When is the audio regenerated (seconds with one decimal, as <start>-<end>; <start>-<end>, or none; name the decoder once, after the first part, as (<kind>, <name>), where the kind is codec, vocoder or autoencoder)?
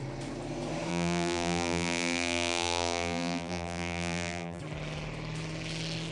0.9-4.6 (vocoder, BigVGAN v2)